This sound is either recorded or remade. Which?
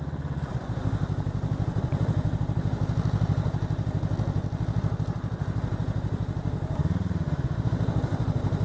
recorded